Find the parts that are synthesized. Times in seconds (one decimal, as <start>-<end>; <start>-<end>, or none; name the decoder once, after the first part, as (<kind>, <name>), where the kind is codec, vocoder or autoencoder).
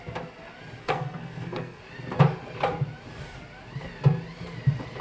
0.8-1.8 (codec, SNAC)